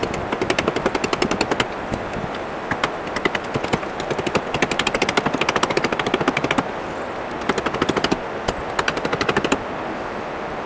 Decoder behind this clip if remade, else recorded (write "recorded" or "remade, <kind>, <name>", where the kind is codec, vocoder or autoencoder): recorded